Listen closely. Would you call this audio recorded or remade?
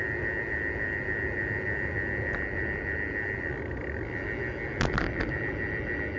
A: recorded